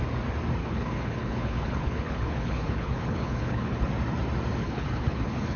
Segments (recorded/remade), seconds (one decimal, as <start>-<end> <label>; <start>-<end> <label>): 0.0-0.6 recorded; 0.6-3.9 remade; 3.9-4.6 recorded; 4.6-5.6 remade